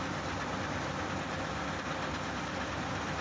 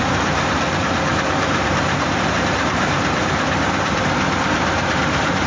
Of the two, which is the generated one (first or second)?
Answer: second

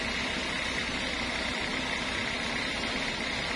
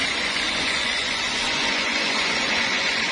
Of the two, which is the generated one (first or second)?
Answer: second